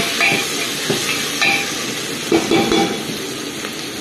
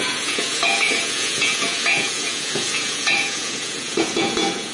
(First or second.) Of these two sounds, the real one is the first